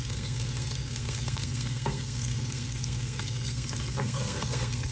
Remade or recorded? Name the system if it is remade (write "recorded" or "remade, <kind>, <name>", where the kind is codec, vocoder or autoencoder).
remade, codec, SNAC